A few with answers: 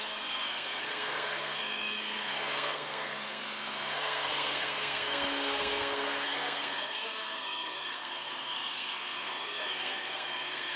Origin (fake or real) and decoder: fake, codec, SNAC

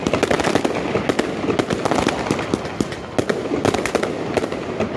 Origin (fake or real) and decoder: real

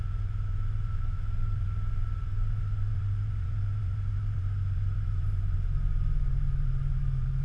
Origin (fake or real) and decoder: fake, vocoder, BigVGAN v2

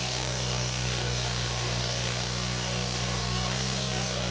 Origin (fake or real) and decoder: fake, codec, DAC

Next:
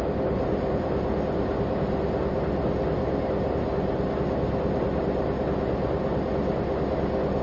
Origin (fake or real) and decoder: real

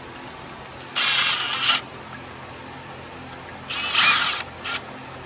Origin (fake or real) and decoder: real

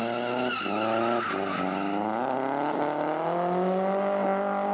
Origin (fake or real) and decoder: real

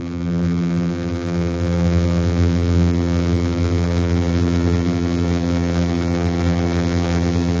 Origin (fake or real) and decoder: fake, vocoder, BigVGAN v2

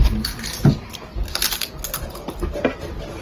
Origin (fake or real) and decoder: real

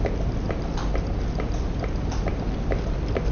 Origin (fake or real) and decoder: real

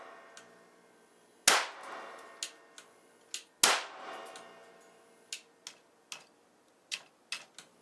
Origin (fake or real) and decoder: real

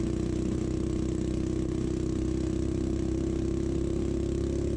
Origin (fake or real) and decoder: real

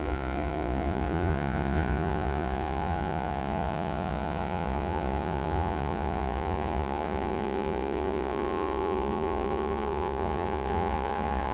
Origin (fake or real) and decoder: fake, vocoder, Vocos